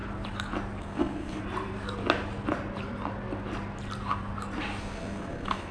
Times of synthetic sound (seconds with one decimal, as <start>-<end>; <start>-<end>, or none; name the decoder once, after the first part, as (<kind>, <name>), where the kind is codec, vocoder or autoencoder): 0.8-1.4 (codec, SNAC); 4.8-5.7